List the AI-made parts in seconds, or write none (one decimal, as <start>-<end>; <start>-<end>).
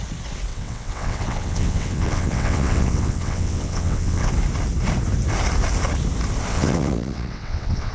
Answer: 0.5-4.3; 6.5-7.9